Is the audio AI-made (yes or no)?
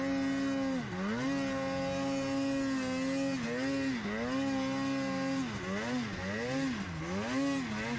no